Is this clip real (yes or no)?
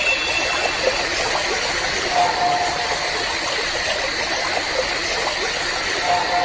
yes